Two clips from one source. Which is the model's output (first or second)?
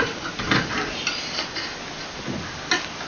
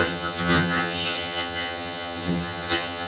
second